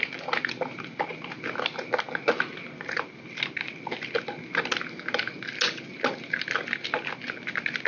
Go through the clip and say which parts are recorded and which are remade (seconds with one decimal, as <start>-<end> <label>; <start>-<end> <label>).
0.0-7.9 recorded